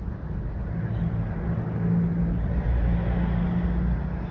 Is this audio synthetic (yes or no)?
no